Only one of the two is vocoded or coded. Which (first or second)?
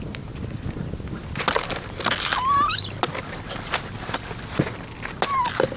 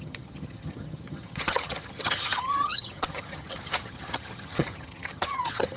second